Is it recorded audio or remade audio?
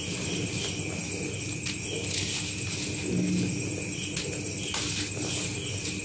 recorded